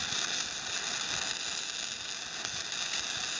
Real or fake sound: real